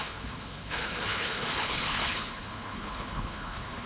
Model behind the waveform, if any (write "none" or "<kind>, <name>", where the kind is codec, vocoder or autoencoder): codec, HILCodec